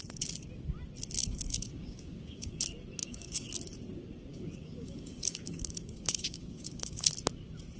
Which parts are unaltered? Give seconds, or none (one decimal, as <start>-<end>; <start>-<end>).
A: 0.0-1.2; 2.6-3.0; 3.5-4.3; 7.1-7.8

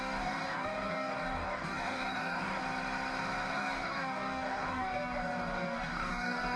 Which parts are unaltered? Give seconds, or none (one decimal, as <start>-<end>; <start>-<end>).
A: 2.6-3.5

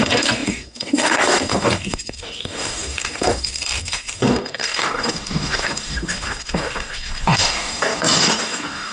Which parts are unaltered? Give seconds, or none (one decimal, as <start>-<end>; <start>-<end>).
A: none

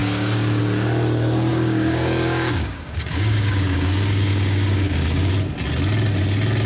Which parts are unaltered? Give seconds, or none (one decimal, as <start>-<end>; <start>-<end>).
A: 0.6-1.5; 5.3-6.7

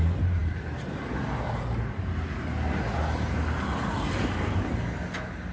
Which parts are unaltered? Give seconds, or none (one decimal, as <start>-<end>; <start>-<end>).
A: 0.0-5.5

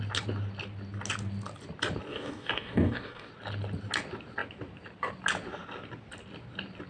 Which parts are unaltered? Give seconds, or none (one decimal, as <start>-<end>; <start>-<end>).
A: 0.0-2.1; 3.3-6.9

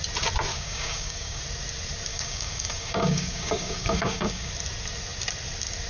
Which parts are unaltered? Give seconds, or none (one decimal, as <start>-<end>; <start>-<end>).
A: 0.0-0.5; 1.4-2.1; 4.5-5.9